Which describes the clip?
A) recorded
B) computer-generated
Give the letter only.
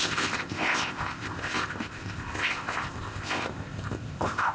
B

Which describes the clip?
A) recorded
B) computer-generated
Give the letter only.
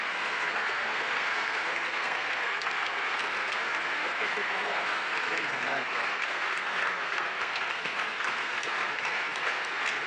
B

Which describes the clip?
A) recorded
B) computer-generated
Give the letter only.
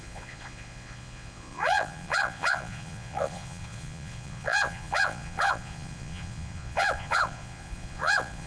B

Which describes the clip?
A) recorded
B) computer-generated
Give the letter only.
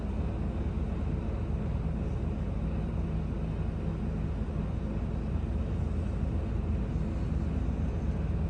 A